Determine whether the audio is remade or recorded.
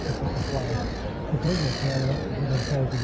recorded